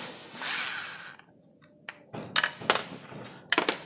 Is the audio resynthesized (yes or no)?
no